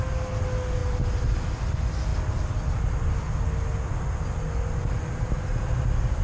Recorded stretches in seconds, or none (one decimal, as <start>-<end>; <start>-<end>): 0.0-6.2